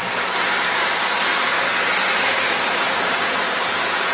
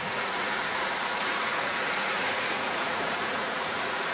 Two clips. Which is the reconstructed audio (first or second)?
second